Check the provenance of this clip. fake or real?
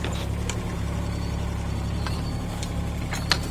real